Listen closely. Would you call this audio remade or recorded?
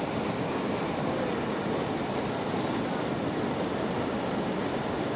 recorded